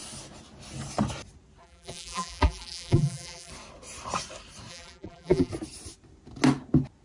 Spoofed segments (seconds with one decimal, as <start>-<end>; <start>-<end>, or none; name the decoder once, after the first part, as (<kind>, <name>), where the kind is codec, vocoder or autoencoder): 1.6-3.5 (vocoder, BigVGAN v2); 4.7-5.5